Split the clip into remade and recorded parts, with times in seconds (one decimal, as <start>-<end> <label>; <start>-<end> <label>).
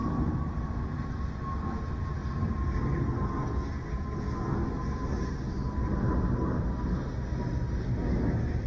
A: 0.0-1.1 remade; 1.1-8.7 recorded